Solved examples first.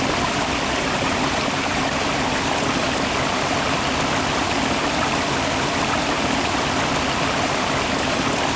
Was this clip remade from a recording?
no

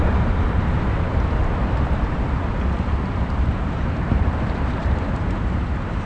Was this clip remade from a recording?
yes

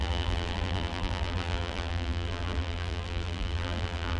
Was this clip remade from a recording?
yes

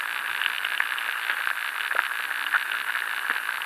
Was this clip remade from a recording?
no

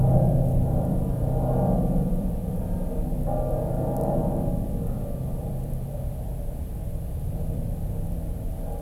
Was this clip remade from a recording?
yes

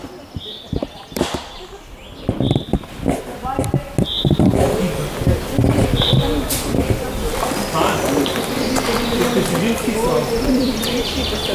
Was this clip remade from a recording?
no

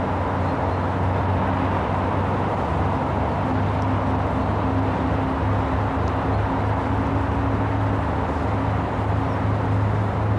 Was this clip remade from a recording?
no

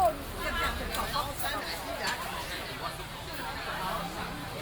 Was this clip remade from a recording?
no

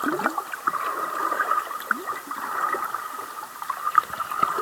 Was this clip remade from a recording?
yes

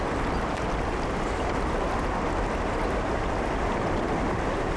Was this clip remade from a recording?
no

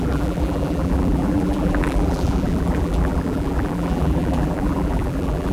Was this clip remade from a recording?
yes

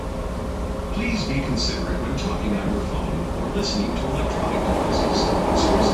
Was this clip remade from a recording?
yes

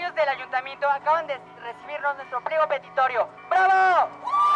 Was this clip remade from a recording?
no